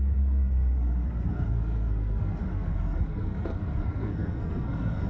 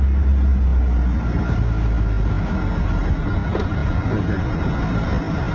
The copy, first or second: first